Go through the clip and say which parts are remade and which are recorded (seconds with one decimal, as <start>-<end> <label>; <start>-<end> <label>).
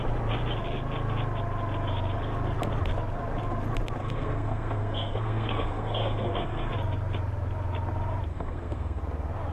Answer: 0.0-4.0 recorded; 4.0-6.7 remade; 6.7-8.3 recorded; 8.3-9.0 remade; 9.0-9.5 recorded